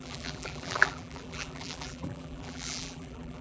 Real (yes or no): no